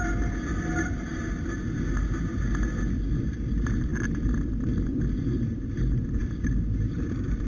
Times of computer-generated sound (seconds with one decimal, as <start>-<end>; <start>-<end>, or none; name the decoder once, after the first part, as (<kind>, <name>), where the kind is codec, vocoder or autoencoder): none